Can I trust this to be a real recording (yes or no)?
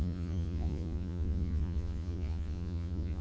no